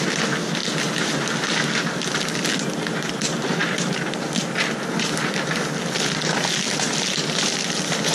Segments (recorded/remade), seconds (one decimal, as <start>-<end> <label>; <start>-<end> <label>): 0.0-8.1 recorded

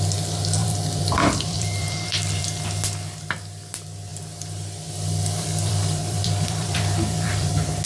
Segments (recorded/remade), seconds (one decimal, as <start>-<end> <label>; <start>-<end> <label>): 0.0-0.6 recorded; 0.6-2.4 remade; 2.4-4.1 recorded; 4.1-7.5 remade; 7.5-7.9 recorded

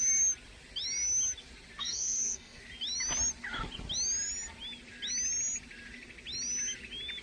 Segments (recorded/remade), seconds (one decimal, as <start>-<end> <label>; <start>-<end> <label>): 0.0-1.8 recorded; 1.8-2.6 remade; 2.6-7.2 recorded